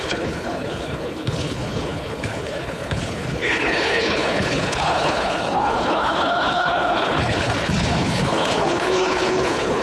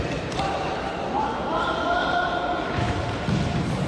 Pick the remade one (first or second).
first